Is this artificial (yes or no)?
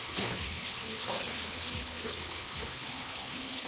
yes